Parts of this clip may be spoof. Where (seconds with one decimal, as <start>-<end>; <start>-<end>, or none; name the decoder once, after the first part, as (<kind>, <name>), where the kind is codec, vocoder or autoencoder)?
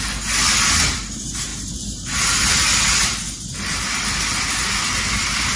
none